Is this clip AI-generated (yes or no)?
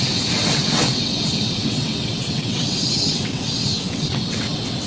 yes